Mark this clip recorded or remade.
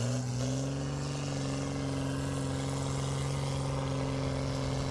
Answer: recorded